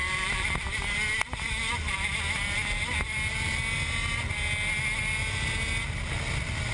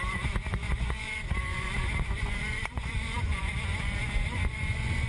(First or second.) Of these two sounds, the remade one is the second